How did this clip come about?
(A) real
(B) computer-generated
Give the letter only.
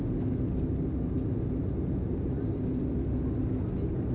A